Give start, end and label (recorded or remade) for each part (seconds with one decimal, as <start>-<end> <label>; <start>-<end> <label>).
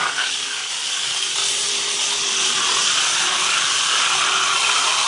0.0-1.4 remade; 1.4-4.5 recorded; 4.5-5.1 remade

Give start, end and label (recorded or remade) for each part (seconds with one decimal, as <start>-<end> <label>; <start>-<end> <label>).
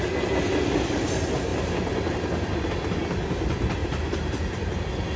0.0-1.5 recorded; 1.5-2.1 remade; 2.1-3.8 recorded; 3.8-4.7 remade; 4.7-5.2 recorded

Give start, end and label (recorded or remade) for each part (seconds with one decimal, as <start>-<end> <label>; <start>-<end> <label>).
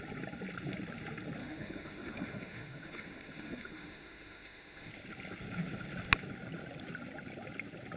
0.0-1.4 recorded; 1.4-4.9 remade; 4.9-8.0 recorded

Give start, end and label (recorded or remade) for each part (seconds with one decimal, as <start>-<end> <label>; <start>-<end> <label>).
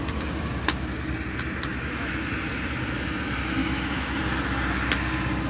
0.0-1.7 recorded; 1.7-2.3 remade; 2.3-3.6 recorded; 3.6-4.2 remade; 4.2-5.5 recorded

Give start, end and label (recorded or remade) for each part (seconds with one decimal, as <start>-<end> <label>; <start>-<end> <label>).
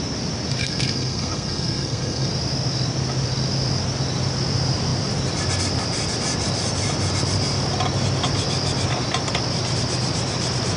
0.0-0.6 recorded; 0.6-2.3 remade; 2.3-10.8 recorded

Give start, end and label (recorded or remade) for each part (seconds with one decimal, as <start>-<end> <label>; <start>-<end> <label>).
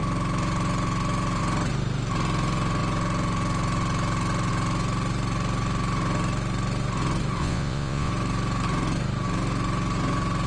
0.0-7.4 recorded; 7.4-8.1 remade; 8.1-10.5 recorded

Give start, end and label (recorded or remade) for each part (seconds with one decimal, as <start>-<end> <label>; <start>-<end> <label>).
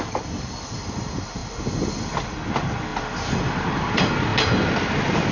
0.0-5.3 recorded